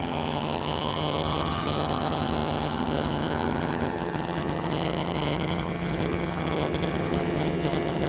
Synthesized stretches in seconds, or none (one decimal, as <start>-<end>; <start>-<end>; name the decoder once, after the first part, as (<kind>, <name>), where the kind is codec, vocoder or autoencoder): 0.0-8.1 (vocoder, HiFi-GAN)